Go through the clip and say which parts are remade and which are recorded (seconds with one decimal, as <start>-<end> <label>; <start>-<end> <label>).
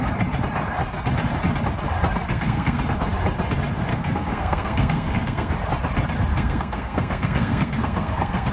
0.0-2.3 recorded; 2.3-2.8 remade; 2.8-3.9 recorded; 3.9-5.5 remade; 5.5-6.3 recorded; 6.3-8.5 remade